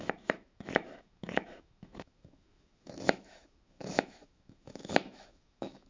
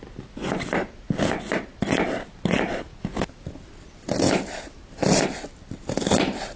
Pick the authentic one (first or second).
second